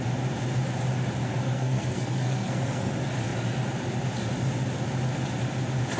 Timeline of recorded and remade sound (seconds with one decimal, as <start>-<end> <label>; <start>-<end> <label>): 0.0-1.2 recorded; 1.2-2.9 remade; 2.9-6.0 recorded